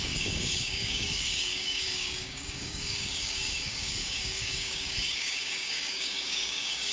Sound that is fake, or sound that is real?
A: fake